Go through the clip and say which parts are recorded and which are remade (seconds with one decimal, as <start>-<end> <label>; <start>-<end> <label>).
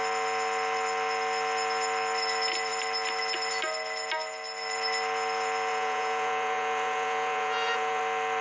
0.0-5.7 recorded; 5.7-8.0 remade; 8.0-8.4 recorded